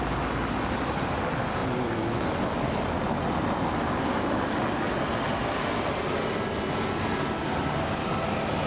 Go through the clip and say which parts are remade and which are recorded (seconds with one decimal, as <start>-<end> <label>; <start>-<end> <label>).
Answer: 0.0-8.7 recorded